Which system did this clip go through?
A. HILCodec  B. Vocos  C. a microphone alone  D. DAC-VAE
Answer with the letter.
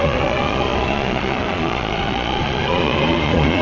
B